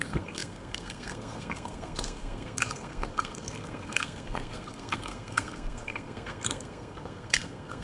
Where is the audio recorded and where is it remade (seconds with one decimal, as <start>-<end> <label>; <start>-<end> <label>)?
0.0-7.8 remade